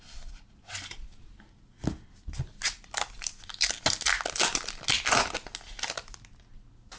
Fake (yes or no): no